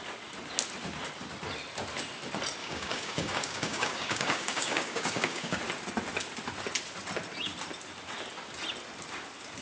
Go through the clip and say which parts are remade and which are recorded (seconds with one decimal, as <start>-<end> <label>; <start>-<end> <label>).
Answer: 0.0-2.6 recorded; 2.6-5.6 remade; 5.6-9.6 recorded